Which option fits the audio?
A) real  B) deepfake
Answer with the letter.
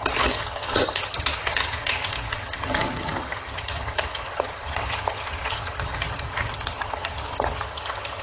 B